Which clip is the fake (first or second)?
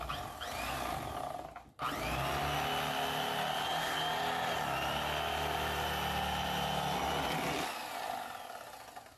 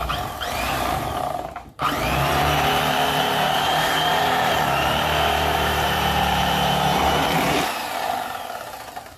second